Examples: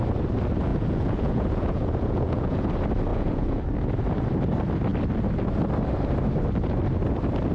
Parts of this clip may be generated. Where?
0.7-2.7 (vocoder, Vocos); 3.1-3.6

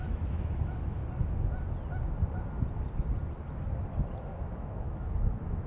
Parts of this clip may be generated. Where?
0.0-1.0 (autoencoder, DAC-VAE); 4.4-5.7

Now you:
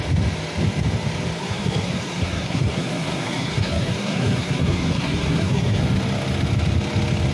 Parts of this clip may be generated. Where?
1.4-5.8 (codec, SNAC)

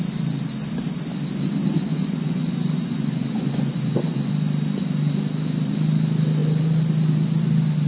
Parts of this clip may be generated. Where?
1.9-4.3 (vocoder, Vocos)

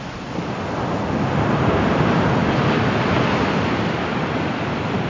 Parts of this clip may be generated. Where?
none

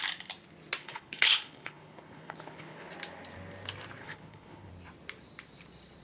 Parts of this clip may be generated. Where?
0.8-2.9 (codec, HILCodec); 4.0-4.7

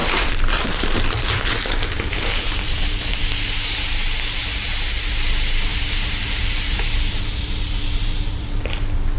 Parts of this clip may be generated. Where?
0.0-3.2 (vocoder, BigVGAN v2); 5.7-8.7

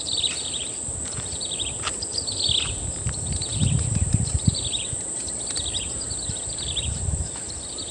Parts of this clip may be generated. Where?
none